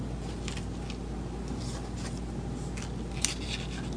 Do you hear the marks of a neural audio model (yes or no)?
no